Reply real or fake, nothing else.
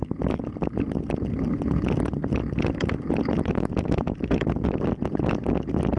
fake